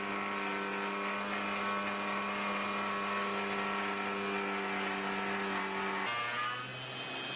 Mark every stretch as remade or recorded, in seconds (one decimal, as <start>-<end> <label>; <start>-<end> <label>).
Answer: 0.0-7.4 recorded